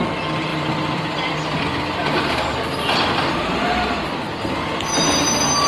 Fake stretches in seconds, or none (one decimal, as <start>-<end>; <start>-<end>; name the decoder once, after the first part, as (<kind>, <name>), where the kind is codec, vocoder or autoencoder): 0.5-2.3 (vocoder, BigVGAN v2)